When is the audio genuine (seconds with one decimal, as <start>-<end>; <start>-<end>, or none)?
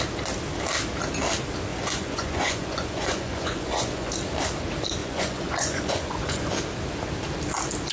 0.0-1.7; 4.1-5.0; 6.5-7.9